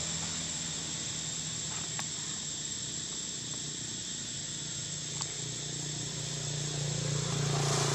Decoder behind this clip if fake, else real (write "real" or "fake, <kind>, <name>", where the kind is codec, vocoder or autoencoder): real